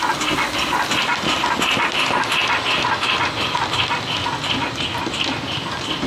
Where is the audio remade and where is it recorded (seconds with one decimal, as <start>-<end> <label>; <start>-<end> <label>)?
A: 0.0-6.1 recorded